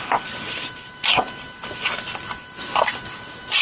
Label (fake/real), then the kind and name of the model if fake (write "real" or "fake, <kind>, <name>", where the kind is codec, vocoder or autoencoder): real